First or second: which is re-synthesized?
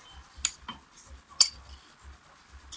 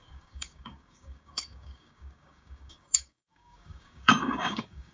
second